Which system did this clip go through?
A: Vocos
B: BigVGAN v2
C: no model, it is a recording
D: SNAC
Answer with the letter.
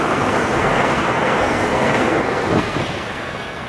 D